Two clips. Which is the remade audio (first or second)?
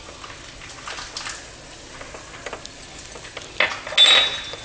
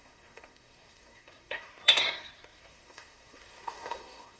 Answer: second